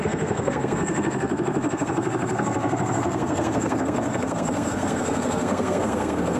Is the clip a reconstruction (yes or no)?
yes